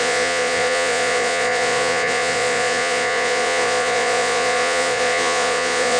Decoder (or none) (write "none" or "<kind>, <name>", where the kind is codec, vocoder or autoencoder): vocoder, Vocos